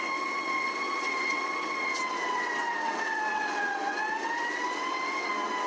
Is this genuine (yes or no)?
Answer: no